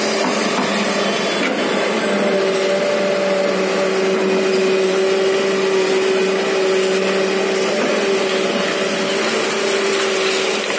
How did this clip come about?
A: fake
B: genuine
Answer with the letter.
B